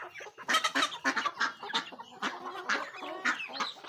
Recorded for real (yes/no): yes